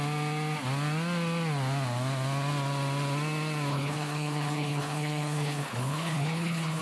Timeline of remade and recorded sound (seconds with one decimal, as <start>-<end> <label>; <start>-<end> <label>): 0.0-3.7 recorded; 3.7-6.8 remade